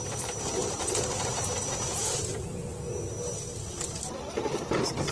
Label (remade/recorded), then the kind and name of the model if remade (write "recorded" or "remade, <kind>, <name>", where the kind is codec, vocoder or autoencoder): recorded